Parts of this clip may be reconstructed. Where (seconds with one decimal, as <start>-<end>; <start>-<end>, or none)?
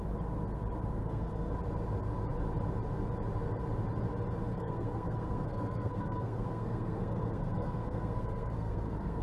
1.0-1.5; 4.5-9.2